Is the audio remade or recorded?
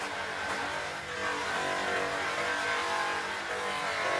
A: recorded